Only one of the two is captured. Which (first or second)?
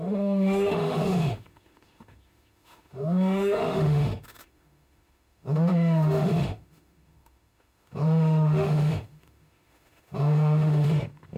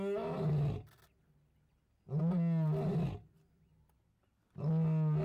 second